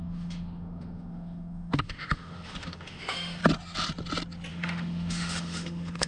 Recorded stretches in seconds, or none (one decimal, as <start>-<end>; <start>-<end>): 3.4-4.5